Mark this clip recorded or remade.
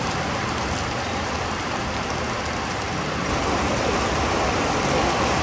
recorded